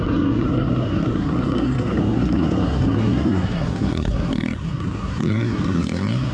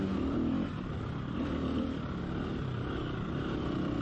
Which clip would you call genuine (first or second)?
second